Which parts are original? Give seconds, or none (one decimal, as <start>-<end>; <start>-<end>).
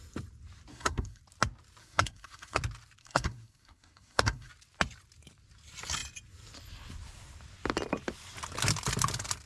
0.0-0.7; 1.2-1.8; 2.6-3.0; 4.5-9.5